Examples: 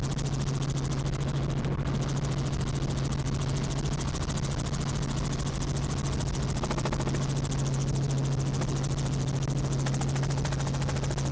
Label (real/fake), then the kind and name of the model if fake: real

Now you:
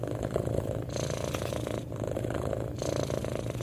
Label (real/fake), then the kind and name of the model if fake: fake, vocoder, BigVGAN v2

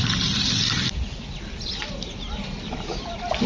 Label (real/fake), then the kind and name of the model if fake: fake, vocoder, BigVGAN v2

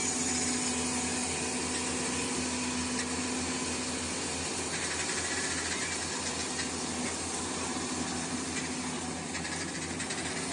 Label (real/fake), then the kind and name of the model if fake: real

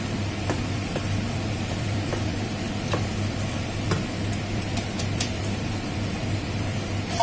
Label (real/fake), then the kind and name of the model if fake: fake, vocoder, BigVGAN v2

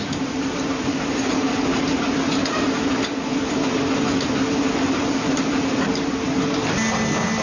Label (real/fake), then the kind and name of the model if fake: real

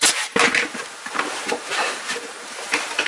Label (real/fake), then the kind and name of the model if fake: fake, vocoder, BigVGAN v2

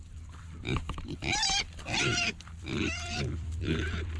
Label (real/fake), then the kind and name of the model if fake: fake, vocoder, BigVGAN v2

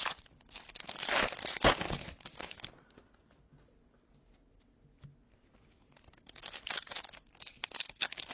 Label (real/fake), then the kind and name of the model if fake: real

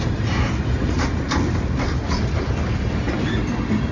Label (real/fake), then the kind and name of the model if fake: real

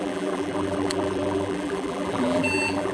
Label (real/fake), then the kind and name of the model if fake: fake, vocoder, BigVGAN v2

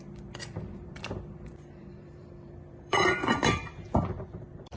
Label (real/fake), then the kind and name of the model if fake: fake, vocoder, BigVGAN v2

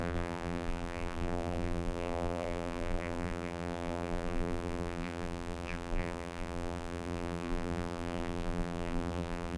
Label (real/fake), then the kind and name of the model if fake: fake, vocoder, BigVGAN v2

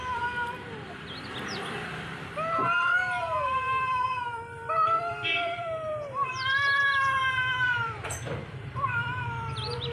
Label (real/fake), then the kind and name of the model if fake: fake, vocoder, BigVGAN v2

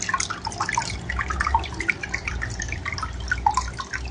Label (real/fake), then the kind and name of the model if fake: fake, vocoder, BigVGAN v2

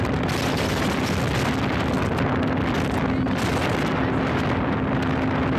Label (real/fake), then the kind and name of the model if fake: real